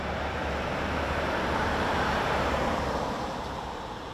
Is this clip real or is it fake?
fake